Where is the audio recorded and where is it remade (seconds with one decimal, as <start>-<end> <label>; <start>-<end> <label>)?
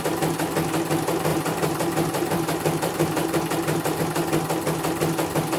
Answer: 0.0-1.3 recorded; 1.3-4.0 remade; 4.0-5.6 recorded